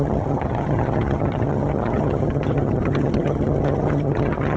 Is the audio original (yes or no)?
no